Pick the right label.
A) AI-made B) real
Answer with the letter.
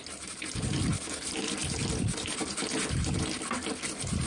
B